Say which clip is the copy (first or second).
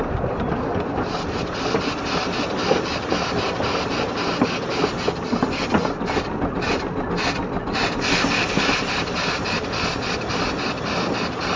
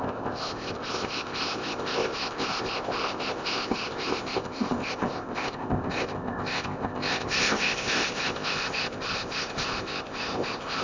second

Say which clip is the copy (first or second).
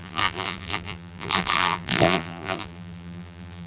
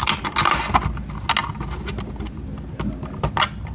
first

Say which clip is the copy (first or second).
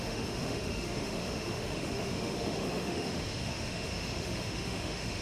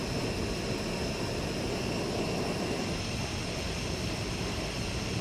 first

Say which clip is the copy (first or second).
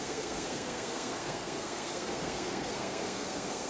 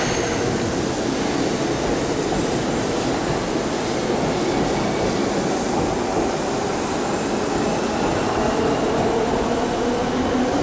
first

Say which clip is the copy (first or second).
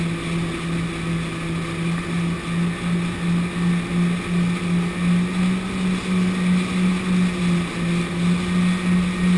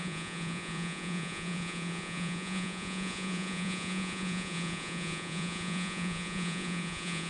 second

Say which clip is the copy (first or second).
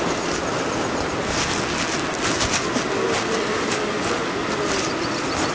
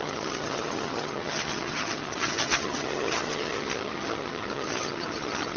second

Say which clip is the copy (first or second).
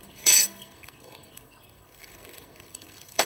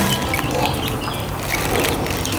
first